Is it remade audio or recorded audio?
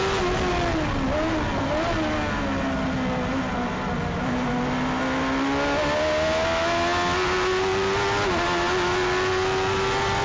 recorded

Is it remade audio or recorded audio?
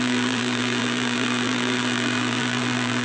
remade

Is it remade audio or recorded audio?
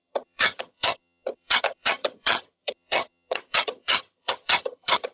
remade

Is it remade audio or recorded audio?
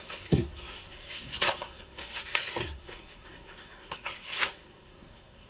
remade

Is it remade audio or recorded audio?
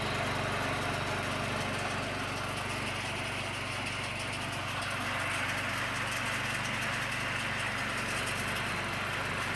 recorded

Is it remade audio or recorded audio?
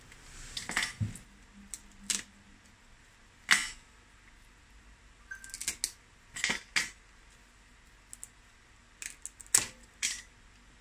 recorded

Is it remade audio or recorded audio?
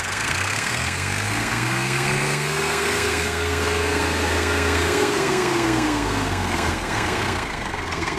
remade